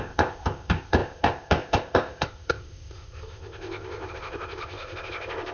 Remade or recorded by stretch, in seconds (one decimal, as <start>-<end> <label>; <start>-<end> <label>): 0.0-5.5 remade